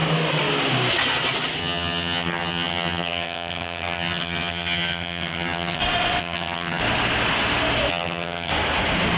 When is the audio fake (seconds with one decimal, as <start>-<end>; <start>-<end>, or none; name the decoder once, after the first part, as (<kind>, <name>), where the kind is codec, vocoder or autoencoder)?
1.6-5.8 (vocoder, HiFi-GAN); 6.2-6.8; 7.9-8.5